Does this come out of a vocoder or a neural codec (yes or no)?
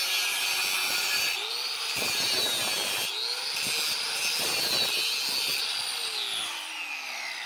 no